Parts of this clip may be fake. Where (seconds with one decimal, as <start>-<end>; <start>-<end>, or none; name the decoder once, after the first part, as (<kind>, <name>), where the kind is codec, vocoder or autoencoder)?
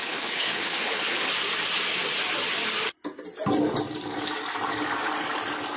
0.0-1.3 (codec, HILCodec)